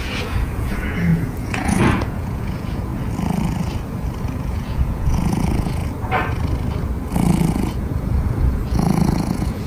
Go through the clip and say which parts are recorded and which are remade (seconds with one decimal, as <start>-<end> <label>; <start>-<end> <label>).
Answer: 0.0-2.9 remade; 2.9-4.2 recorded; 4.2-5.8 remade; 5.8-7.5 recorded; 7.5-9.7 remade